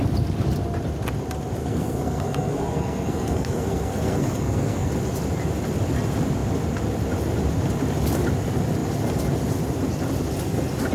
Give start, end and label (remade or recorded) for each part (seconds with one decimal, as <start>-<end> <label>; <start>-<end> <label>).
0.0-1.6 recorded; 1.6-4.9 remade; 4.9-10.9 recorded